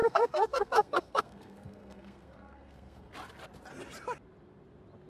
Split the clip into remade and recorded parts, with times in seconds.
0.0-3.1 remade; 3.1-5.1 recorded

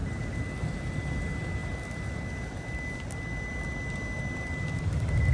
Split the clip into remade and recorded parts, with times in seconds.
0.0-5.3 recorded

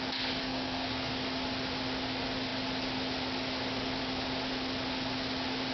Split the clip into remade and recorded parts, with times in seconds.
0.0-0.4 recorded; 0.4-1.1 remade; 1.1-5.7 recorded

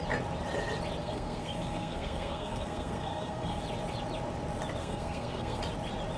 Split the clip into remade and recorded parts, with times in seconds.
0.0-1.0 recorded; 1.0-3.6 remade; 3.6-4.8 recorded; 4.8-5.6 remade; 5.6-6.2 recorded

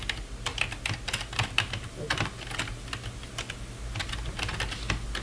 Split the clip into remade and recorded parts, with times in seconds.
0.0-5.2 recorded

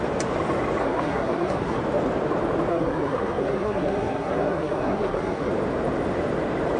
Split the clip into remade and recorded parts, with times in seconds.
0.0-0.8 recorded; 0.8-1.8 remade; 1.8-2.7 recorded; 2.7-5.5 remade; 5.5-6.8 recorded

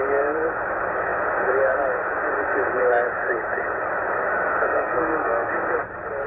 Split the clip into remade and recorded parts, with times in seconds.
0.0-4.6 recorded; 4.6-5.5 remade; 5.5-6.3 recorded

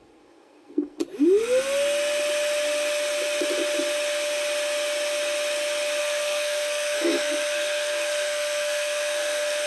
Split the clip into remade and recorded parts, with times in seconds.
0.0-1.0 remade; 1.0-6.0 recorded; 6.0-9.7 remade